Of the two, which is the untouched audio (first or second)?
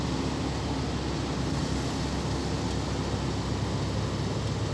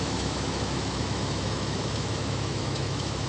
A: first